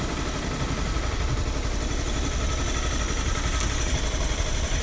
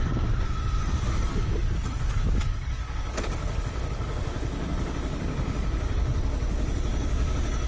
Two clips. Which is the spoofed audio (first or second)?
second